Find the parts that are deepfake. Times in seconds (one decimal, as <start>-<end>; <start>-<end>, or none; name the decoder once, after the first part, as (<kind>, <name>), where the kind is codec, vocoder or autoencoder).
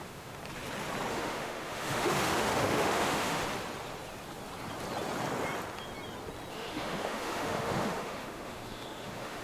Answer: 0.0-0.4 (autoencoder, DAC-VAE); 1.1-3.4; 6.5-9.4